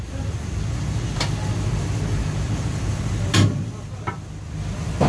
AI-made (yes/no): no